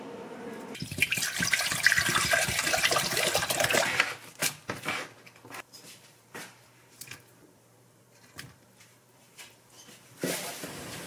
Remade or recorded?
remade